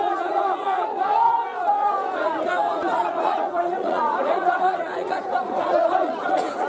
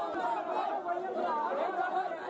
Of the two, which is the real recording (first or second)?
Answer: second